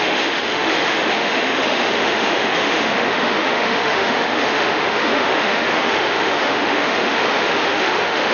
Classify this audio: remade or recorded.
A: remade